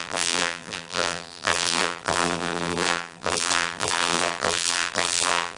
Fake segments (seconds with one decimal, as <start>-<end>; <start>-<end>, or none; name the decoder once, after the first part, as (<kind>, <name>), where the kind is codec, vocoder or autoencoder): 0.0-5.6 (vocoder, BigVGAN v2)